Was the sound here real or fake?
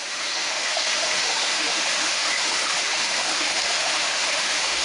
fake